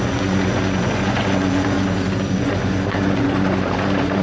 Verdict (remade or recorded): remade